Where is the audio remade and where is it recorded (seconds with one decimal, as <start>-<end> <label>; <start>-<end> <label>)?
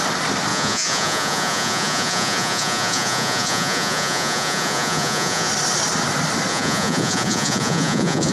0.0-0.5 recorded; 0.5-5.5 remade; 5.5-6.5 recorded; 6.5-8.3 remade